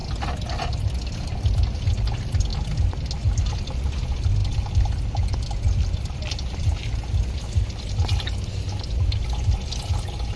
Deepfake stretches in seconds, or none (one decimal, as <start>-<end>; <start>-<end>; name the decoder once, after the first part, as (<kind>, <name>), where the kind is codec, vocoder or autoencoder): none